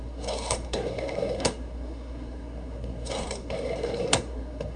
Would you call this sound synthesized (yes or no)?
yes